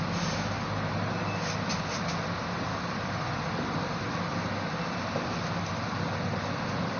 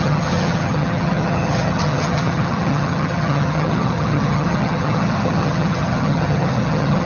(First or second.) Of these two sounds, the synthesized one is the second